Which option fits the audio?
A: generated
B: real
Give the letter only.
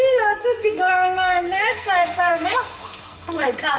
A